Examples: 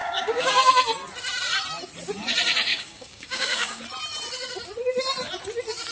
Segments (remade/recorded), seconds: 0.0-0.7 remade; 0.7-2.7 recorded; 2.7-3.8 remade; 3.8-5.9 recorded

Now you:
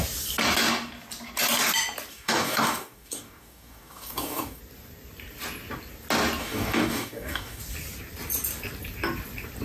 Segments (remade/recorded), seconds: 0.0-2.1 recorded; 2.1-4.6 remade; 4.6-6.4 recorded; 6.4-7.6 remade; 7.6-9.6 recorded

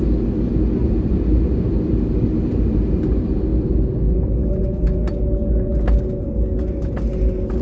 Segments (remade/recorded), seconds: 0.0-7.6 recorded